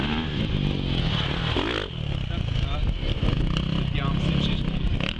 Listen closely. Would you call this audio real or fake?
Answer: real